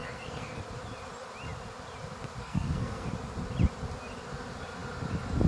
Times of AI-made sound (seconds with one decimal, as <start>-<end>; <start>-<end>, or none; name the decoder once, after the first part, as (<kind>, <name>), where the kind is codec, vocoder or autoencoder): 0.0-0.6 (codec, SNAC); 2.4-3.1